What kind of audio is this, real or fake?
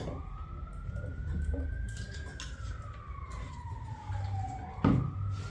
real